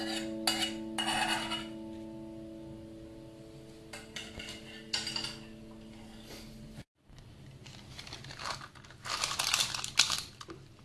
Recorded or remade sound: recorded